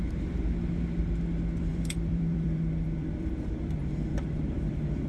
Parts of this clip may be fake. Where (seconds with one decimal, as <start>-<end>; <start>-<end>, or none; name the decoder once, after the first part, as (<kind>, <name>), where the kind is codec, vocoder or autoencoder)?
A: 1.7-5.1 (vocoder, BigVGAN v2)